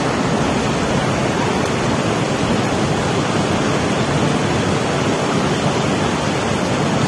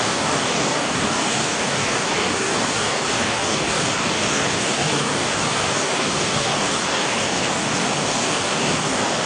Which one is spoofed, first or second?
second